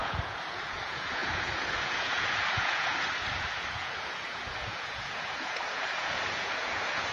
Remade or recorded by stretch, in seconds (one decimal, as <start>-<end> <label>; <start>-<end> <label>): 0.0-7.1 remade